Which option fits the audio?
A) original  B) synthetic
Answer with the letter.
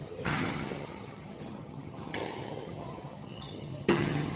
B